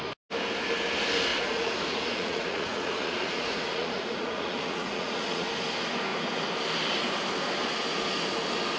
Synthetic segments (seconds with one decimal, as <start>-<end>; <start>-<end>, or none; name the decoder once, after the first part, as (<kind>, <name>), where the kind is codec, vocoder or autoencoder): 1.3-5.5 (vocoder, Vocos)